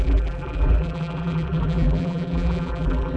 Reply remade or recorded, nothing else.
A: remade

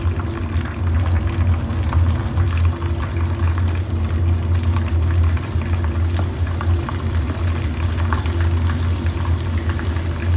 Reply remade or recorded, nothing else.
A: recorded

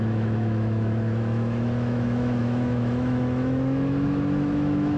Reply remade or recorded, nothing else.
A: remade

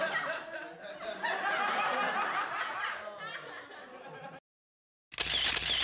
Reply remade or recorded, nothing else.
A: recorded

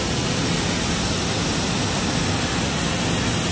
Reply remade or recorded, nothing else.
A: recorded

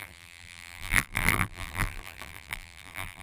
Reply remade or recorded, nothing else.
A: remade